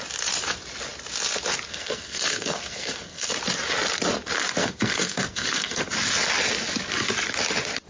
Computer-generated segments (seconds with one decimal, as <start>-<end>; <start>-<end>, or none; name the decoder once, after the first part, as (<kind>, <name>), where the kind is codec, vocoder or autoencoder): 1.7-3.3 (codec, SNAC); 4.6-5.8